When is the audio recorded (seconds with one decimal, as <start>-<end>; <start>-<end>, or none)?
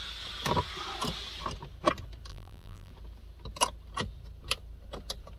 0.0-2.3; 2.9-5.4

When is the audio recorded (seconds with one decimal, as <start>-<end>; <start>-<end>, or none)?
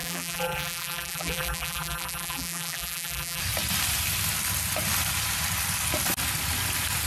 3.4-7.1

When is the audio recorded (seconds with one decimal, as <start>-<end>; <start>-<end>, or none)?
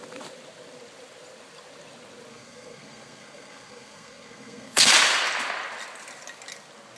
0.0-2.3; 4.9-7.0